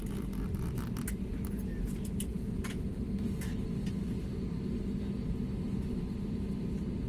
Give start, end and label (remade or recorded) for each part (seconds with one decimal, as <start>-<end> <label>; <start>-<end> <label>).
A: 0.0-2.3 recorded; 2.3-3.0 remade; 3.0-7.1 recorded